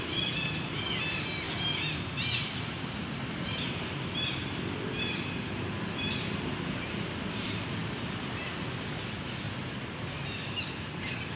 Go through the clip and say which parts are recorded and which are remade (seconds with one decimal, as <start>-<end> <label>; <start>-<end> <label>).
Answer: 0.0-11.4 recorded